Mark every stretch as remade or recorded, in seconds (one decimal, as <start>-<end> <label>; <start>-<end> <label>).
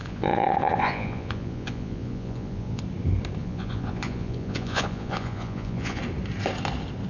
0.0-2.8 remade; 2.8-3.4 recorded; 3.4-6.0 remade; 6.0-7.1 recorded